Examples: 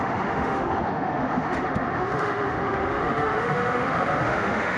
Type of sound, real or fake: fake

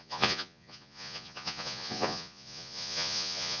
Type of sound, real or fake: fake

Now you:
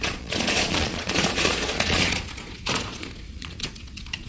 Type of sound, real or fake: fake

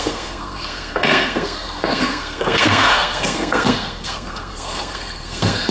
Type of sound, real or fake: fake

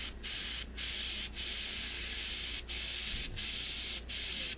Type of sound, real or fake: real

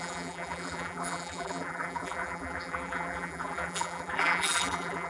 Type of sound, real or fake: fake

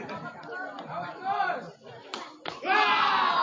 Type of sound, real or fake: real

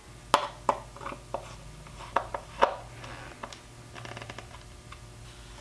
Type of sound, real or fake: real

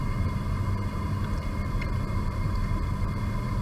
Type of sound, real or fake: fake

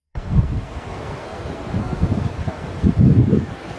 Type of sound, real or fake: fake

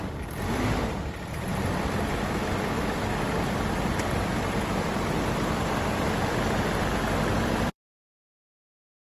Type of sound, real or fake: fake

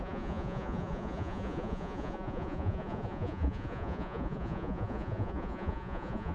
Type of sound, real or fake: fake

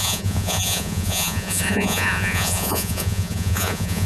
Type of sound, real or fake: fake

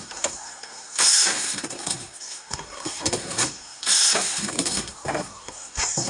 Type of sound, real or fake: fake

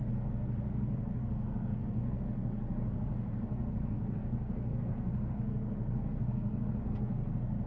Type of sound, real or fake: fake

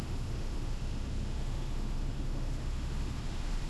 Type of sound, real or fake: fake